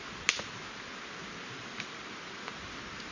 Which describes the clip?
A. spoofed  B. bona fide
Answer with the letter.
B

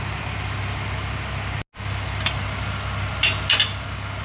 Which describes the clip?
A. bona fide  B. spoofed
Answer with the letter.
A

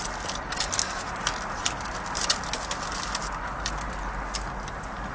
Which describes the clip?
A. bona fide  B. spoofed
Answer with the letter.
A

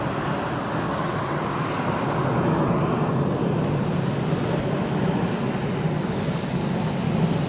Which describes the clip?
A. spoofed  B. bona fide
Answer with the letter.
B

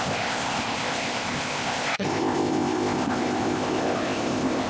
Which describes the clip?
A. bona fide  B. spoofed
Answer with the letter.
B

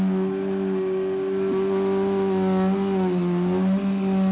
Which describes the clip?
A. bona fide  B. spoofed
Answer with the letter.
A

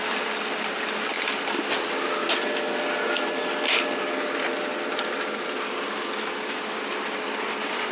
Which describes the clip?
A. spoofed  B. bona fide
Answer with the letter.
B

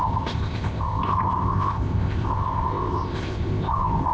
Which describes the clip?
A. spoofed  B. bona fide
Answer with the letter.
A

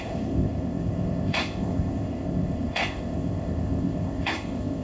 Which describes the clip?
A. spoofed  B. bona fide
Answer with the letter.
A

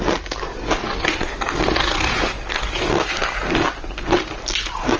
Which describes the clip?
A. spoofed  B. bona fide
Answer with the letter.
B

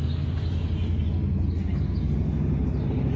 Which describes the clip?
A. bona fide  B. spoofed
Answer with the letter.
A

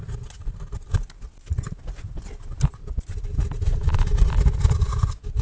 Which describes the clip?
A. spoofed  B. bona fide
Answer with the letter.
B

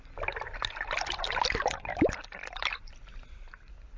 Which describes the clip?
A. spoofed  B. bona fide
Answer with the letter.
B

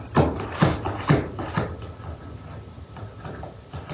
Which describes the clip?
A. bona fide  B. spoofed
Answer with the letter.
A